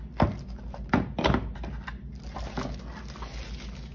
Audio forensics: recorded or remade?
recorded